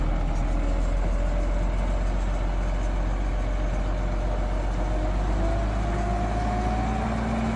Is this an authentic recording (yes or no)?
yes